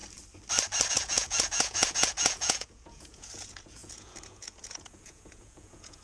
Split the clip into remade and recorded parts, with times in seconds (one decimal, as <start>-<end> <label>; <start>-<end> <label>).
0.0-0.9 recorded; 0.9-6.0 remade